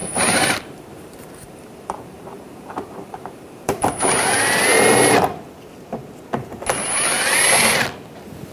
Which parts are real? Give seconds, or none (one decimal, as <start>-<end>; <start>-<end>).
4.0-8.5